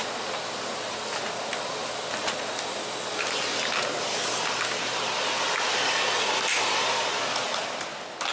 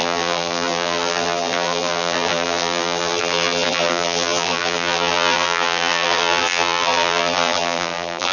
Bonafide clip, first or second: first